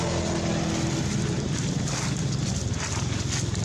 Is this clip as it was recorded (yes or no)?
yes